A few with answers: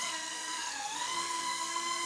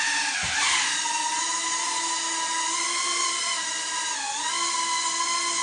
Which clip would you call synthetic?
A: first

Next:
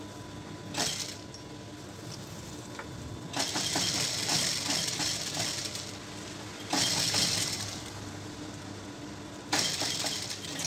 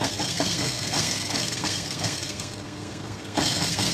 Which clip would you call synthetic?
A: second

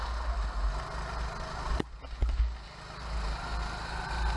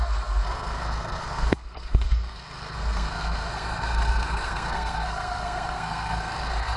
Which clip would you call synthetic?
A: second